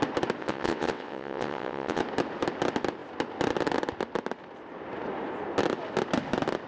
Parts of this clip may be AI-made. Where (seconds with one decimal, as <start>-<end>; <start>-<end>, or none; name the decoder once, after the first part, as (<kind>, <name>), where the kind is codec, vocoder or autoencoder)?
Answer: 0.4-2.0 (vocoder, WaveNeXt)